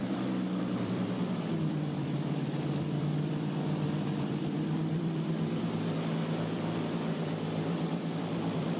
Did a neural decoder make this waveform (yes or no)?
yes